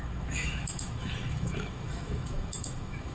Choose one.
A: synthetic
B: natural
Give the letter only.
A